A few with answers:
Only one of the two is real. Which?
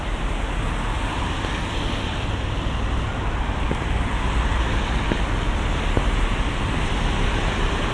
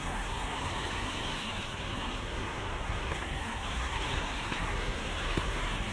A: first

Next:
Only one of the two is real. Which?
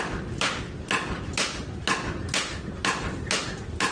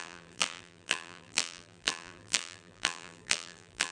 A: first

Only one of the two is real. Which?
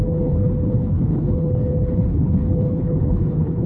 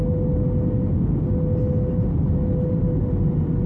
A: second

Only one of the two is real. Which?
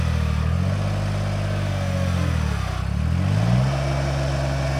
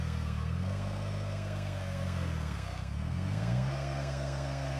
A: first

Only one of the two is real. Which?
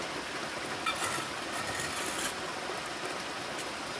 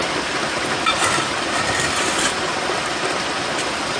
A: first